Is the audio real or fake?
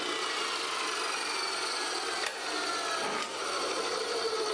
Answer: real